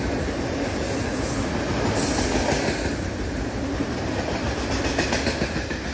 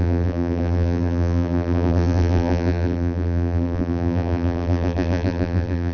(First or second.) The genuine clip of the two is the first